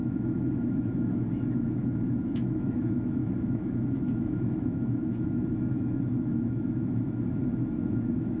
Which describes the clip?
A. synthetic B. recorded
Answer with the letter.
A